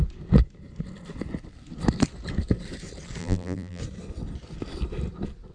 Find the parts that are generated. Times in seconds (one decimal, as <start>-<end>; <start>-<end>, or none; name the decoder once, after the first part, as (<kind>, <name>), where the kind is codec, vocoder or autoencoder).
3.2-3.8 (vocoder, BigVGAN v2)